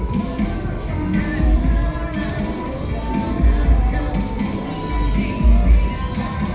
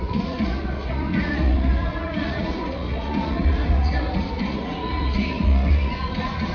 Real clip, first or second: first